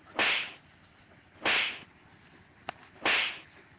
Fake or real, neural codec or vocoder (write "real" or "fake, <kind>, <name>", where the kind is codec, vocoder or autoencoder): real